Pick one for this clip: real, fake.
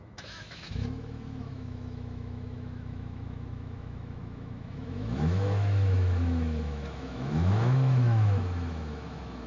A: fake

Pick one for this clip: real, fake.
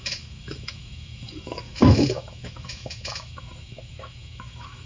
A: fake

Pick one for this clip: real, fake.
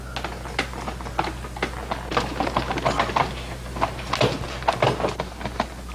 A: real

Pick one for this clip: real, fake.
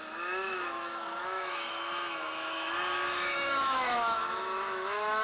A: fake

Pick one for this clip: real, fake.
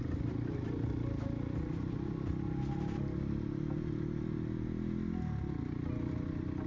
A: real